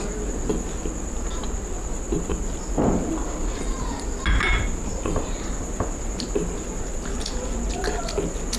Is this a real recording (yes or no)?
yes